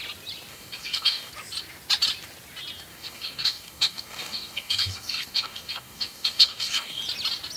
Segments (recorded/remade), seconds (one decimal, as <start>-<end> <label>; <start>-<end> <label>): 0.0-0.5 recorded; 0.5-1.3 remade; 1.3-2.9 recorded; 2.9-7.0 remade; 7.0-7.6 recorded